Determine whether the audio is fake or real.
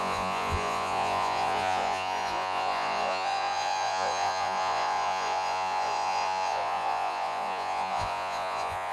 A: fake